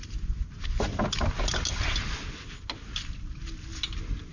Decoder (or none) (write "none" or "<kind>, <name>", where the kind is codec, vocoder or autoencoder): none